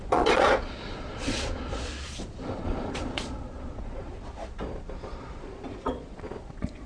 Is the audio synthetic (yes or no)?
yes